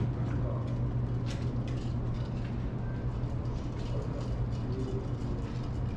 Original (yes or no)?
yes